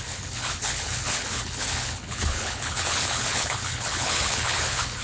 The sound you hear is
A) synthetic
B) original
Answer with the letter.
A